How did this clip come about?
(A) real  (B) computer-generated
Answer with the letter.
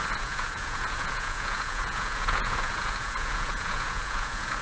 B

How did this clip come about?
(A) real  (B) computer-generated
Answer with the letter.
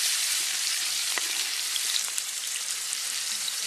B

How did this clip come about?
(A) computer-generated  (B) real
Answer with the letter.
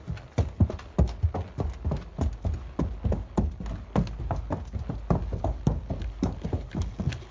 B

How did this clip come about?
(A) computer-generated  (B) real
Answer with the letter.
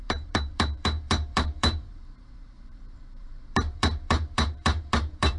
A